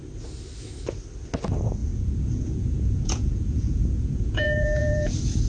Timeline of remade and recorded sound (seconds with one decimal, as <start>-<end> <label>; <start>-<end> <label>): 0.0-1.8 recorded; 1.8-5.1 remade; 5.1-5.5 recorded